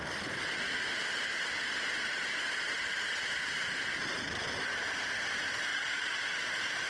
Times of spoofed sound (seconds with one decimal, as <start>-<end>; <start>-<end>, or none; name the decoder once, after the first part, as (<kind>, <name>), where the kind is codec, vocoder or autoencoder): 5.7-6.4 (vocoder, Vocos)